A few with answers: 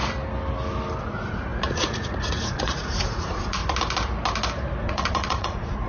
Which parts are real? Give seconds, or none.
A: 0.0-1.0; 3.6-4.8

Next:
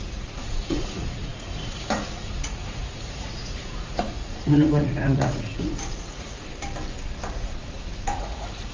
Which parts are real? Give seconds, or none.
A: 6.5-7.3

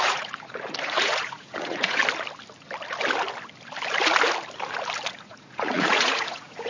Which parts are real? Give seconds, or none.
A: 2.0-5.1